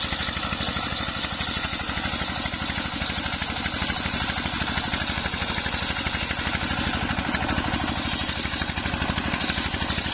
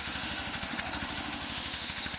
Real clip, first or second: first